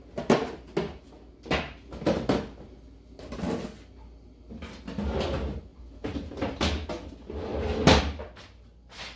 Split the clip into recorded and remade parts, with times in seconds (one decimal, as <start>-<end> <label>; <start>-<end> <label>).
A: 0.0-5.7 recorded; 5.7-6.6 remade; 6.6-7.5 recorded; 7.5-8.0 remade; 8.0-9.2 recorded